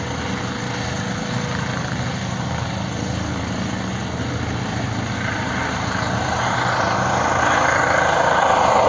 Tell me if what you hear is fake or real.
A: real